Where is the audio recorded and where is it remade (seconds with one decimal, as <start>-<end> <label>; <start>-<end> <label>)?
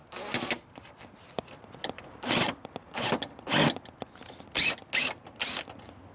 0.0-6.1 recorded